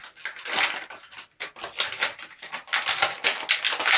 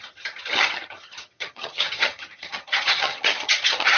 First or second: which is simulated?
second